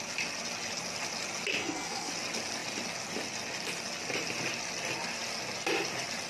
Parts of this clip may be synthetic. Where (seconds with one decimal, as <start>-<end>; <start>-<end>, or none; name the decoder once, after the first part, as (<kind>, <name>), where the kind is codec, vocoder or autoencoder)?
1.6-2.1 (codec, SNAC)